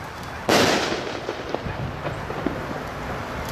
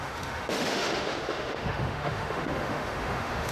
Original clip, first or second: first